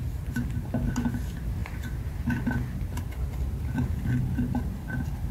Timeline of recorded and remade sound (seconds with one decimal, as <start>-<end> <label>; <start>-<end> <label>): 0.0-5.3 recorded